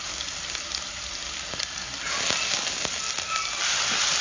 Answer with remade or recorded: recorded